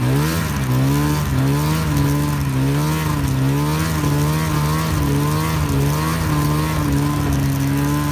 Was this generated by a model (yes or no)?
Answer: no